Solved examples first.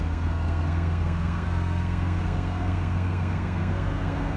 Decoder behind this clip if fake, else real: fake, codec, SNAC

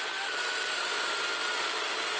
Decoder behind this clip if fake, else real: fake, vocoder, BigVGAN v2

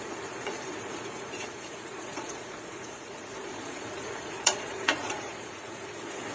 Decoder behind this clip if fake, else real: fake, vocoder, Vocos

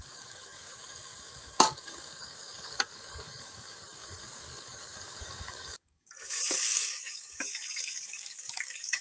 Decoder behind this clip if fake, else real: fake, codec, DAC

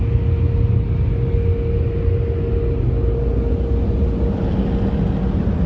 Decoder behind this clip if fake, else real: real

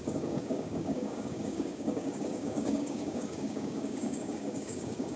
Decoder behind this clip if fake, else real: fake, codec, DAC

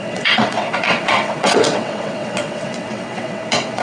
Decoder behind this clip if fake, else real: fake, vocoder, WaveNeXt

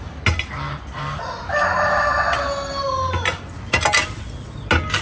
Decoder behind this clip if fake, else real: real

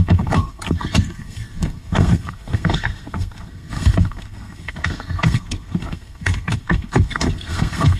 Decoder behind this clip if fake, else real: fake, codec, SNAC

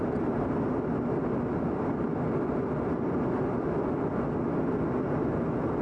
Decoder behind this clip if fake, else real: real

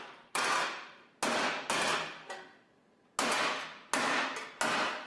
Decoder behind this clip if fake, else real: real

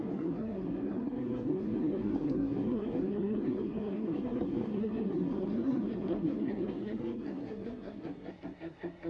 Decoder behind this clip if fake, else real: fake, codec, SNAC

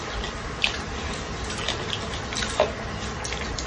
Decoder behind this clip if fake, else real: real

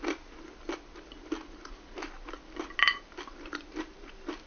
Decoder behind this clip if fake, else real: real